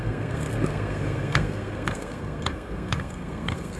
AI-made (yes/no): yes